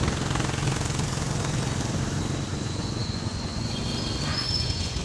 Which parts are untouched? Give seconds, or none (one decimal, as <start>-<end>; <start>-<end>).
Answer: 0.0-2.5; 3.8-4.3